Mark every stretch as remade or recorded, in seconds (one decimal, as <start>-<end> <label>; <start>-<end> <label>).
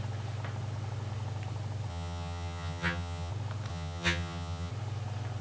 0.0-1.9 recorded; 1.9-3.3 remade; 3.3-3.7 recorded; 3.7-4.7 remade; 4.7-5.4 recorded